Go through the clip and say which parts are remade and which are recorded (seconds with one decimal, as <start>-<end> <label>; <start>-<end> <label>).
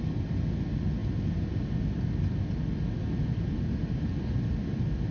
0.0-5.1 recorded